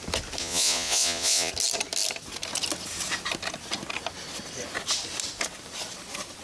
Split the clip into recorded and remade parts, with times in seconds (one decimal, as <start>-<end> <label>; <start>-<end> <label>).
0.0-0.4 recorded; 0.4-1.5 remade; 1.5-6.4 recorded